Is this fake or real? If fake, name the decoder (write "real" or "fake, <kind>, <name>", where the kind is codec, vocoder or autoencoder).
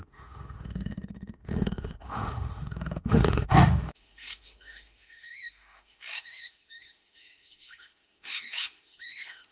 fake, autoencoder, DAC-VAE